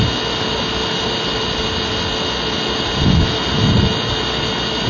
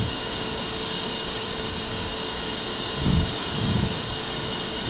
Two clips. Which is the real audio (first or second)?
first